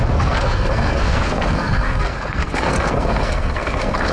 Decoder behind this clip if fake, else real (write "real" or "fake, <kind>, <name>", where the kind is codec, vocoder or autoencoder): fake, codec, SNAC